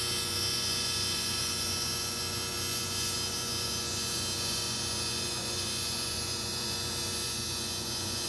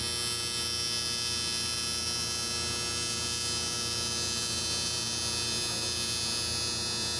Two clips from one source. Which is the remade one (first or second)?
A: first